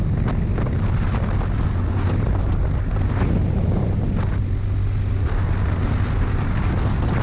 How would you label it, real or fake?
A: real